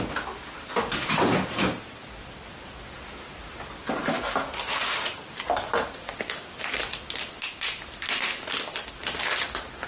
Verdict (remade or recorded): recorded